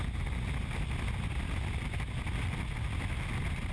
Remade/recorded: recorded